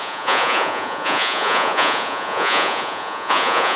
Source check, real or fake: fake